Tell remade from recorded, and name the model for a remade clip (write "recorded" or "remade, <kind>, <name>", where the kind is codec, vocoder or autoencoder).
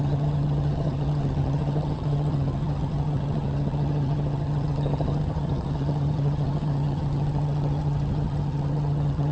remade, vocoder, HiFi-GAN